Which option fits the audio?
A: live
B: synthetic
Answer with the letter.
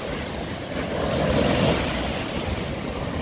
A